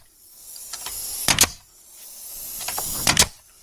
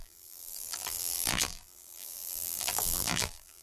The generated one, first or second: second